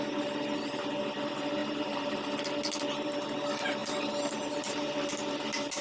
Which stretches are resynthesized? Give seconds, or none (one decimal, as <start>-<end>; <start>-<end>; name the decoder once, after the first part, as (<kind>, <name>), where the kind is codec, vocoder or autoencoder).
1.6-2.4 (vocoder, BigVGAN v2); 3.8-5.1